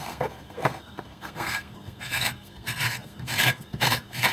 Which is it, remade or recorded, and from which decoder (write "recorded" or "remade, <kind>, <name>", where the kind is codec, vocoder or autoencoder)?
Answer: remade, codec, SNAC